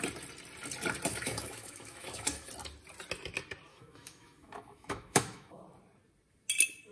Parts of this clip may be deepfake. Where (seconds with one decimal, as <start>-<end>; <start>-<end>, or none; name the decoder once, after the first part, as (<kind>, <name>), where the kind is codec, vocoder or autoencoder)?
1.1-2.5 (autoencoder, DAC-VAE); 3.7-5.6